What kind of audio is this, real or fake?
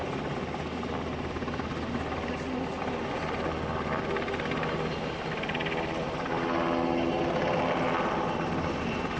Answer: real